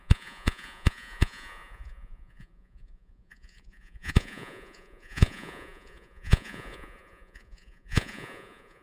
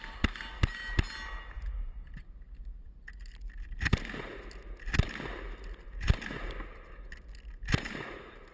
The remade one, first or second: first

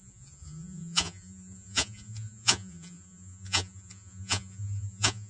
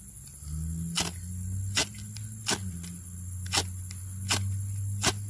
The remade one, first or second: first